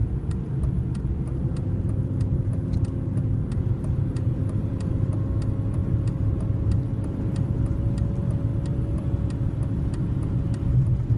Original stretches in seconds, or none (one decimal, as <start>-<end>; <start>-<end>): 1.4-3.4; 5.3-5.8; 7.6-8.5; 10.0-11.2